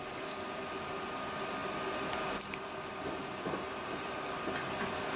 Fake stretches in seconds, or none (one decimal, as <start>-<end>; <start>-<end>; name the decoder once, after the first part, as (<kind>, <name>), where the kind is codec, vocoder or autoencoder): none